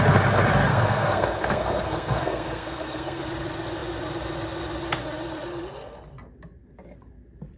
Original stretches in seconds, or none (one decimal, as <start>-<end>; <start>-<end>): 0.0-0.7; 3.2-7.6